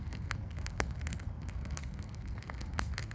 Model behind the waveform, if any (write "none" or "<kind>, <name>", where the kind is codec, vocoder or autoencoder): codec, SNAC